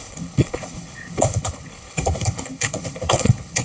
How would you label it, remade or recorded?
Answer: remade